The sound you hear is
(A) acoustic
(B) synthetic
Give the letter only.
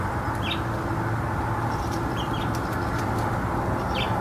A